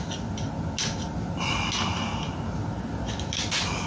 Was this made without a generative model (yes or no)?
yes